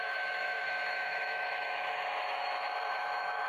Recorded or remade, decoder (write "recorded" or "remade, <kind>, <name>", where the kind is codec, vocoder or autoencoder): remade, autoencoder, DAC-VAE